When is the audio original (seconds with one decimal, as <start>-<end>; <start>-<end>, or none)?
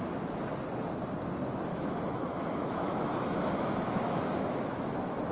0.0-1.7